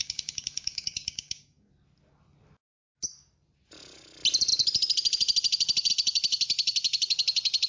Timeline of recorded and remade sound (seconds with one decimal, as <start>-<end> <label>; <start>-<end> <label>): 0.0-1.7 remade; 1.7-7.7 recorded

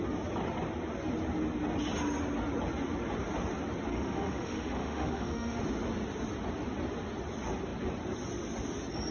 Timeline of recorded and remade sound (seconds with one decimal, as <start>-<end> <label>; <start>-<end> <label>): 0.0-3.9 recorded; 3.9-5.6 remade; 5.6-9.1 recorded